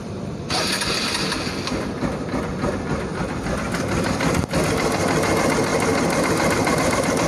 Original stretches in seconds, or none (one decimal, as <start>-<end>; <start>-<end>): 0.0-5.7